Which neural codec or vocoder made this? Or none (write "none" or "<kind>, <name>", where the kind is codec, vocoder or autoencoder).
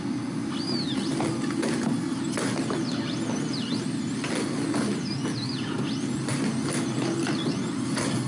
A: none